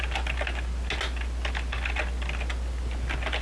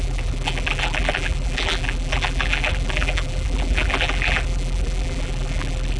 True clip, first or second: first